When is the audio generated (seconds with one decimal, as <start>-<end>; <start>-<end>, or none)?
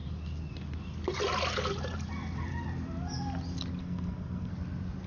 3.8-4.5